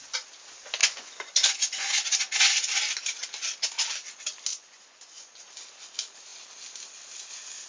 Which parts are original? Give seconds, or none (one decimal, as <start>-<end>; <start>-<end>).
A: 0.0-0.8; 2.4-4.5; 5.4-7.7